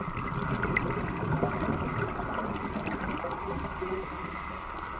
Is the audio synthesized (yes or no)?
no